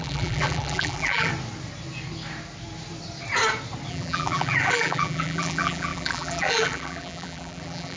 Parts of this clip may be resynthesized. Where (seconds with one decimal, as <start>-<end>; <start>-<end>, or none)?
0.0-1.3; 3.9-8.0

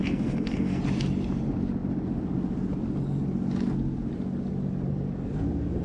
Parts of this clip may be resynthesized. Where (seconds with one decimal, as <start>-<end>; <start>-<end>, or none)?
0.0-0.8

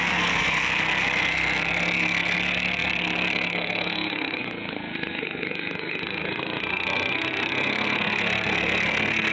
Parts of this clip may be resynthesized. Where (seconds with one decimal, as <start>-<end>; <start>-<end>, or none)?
0.0-9.3

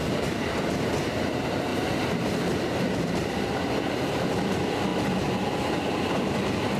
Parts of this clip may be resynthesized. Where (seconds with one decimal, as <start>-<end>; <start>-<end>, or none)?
0.0-0.6; 1.7-4.3

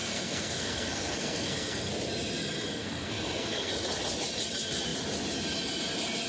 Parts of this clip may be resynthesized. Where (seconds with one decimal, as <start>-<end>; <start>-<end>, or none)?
0.0-1.9; 2.7-3.7

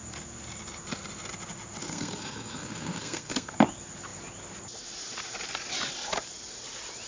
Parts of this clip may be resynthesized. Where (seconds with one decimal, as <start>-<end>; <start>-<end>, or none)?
1.8-3.5